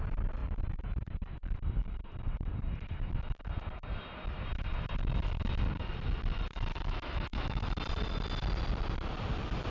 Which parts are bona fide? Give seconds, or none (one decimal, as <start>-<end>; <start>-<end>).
0.0-6.7; 7.7-9.7